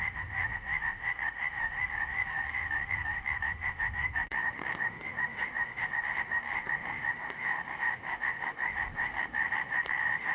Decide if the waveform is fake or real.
fake